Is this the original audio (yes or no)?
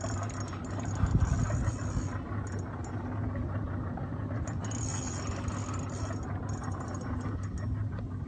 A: yes